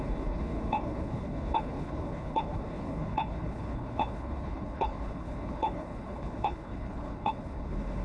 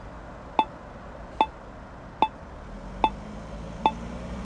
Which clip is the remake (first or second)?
first